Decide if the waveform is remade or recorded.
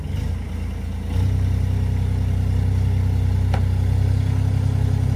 recorded